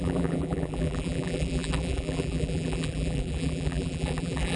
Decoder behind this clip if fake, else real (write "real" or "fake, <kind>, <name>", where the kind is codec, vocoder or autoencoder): fake, vocoder, BigVGAN v2